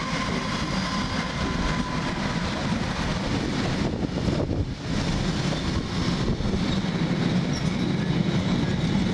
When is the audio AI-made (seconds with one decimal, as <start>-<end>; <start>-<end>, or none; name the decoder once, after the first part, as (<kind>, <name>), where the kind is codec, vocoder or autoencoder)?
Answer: none